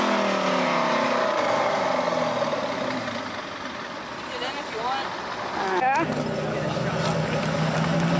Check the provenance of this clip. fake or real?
real